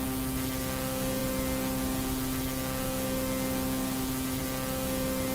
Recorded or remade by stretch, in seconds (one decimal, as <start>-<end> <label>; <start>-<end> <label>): 0.0-5.3 recorded